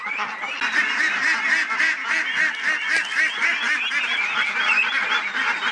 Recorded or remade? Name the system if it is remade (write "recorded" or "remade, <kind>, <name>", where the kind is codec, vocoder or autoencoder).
recorded